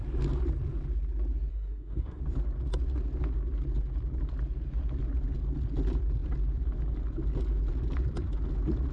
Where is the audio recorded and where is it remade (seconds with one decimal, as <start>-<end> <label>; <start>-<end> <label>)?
0.0-1.5 recorded; 1.5-2.2 remade; 2.2-8.9 recorded